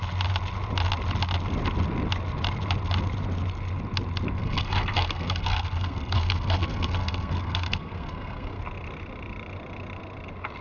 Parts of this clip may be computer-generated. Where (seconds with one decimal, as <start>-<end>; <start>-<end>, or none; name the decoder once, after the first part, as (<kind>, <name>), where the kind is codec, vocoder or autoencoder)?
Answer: 4.4-8.6 (codec, SNAC)

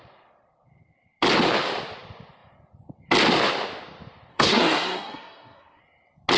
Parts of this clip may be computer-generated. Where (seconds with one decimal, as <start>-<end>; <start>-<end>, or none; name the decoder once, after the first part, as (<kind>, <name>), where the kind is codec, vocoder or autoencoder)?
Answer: 4.3-5.8 (codec, SNAC)

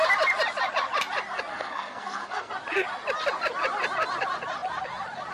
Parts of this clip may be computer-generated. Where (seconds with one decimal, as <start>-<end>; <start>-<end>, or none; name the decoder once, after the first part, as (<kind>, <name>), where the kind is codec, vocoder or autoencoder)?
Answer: 1.5-2.5 (codec, SNAC)